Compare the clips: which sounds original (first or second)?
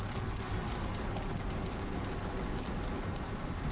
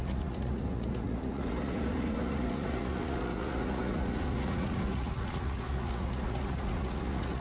first